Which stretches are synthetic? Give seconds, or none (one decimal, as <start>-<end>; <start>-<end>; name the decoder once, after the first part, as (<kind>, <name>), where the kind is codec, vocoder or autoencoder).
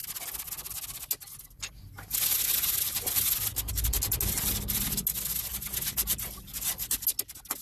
none